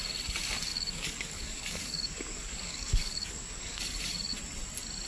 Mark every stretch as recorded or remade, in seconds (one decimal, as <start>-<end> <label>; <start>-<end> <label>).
0.0-0.7 recorded; 0.7-3.8 remade; 3.8-5.1 recorded